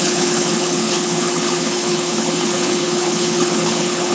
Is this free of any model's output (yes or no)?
no